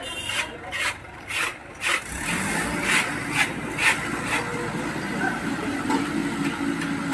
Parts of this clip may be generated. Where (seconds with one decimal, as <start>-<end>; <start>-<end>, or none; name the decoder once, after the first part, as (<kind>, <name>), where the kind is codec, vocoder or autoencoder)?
0.0-1.6 (vocoder, BigVGAN v2); 5.2-6.2